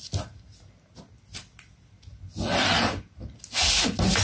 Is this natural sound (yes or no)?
yes